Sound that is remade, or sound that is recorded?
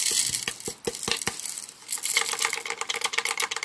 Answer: recorded